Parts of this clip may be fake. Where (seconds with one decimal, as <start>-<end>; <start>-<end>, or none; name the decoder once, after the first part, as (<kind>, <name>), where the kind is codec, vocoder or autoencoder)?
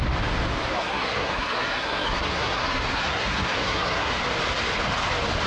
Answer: 0.8-4.1 (codec, SNAC)